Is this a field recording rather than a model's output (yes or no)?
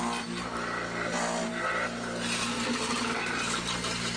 yes